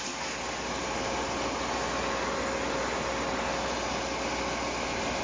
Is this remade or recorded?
recorded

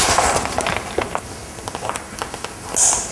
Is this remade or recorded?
recorded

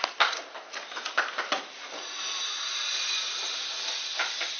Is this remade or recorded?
recorded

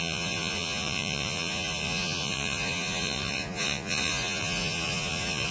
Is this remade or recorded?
remade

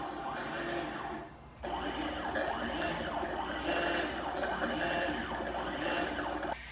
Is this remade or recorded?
recorded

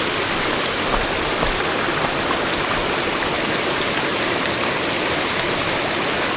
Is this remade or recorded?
recorded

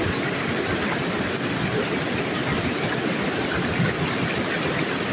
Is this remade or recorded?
recorded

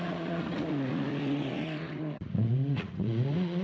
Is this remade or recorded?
remade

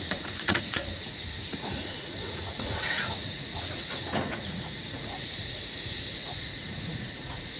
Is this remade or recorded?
remade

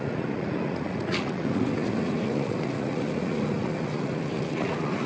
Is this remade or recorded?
remade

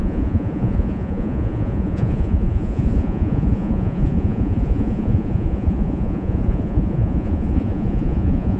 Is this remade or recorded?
remade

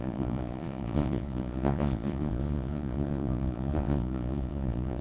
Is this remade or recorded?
remade